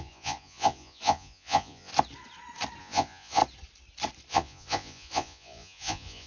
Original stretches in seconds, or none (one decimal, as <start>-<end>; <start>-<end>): 1.9-2.8; 3.4-4.3